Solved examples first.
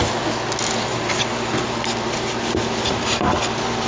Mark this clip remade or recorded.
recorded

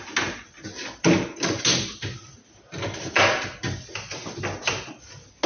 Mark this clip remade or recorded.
recorded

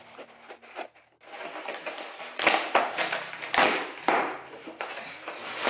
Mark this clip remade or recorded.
recorded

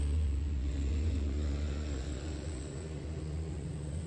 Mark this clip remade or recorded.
remade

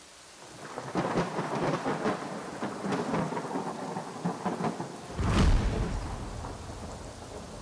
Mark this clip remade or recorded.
recorded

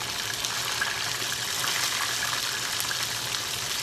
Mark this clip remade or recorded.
recorded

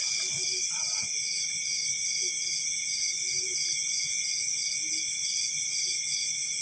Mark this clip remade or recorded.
recorded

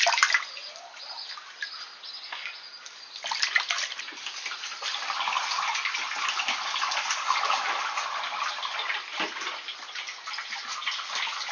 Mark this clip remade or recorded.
recorded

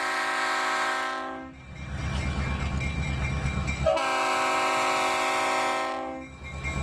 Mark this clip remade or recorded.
recorded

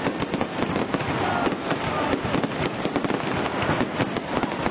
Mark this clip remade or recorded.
recorded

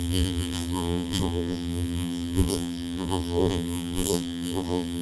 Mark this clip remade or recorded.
remade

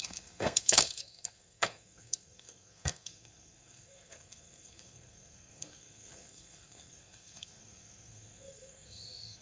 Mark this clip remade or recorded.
remade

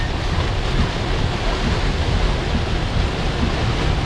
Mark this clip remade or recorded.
recorded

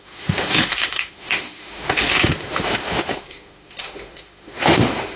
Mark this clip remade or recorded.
remade